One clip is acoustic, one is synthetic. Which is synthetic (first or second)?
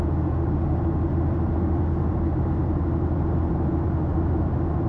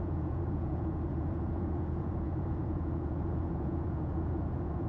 second